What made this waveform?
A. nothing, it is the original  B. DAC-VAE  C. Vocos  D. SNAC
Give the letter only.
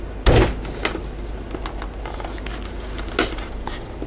A